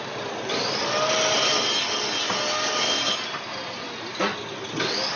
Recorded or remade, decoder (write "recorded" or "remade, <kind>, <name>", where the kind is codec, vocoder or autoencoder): recorded